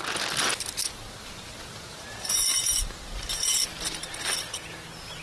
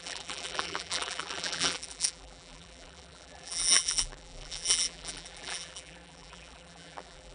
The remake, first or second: second